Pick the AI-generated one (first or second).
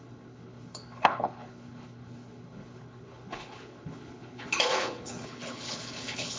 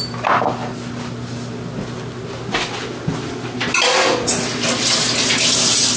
first